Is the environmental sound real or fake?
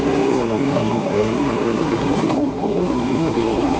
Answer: fake